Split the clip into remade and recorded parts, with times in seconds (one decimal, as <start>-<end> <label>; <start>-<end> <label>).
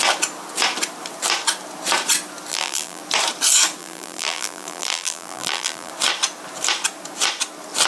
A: 0.0-2.5 recorded; 2.5-3.0 remade; 3.0-3.8 recorded; 3.8-5.9 remade; 5.9-7.9 recorded